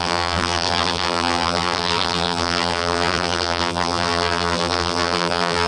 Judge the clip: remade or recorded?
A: remade